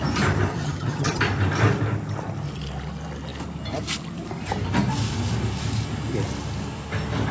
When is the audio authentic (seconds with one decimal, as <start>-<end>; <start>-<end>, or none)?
0.0-0.5; 1.2-7.3